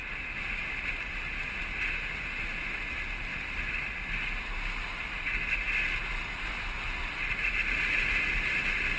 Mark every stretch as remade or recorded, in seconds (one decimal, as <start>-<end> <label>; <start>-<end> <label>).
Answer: 0.0-9.0 recorded